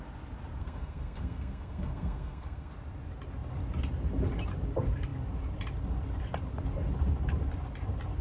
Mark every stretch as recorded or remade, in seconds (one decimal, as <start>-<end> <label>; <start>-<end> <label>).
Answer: 0.0-0.6 recorded; 0.6-2.7 remade; 2.7-8.2 recorded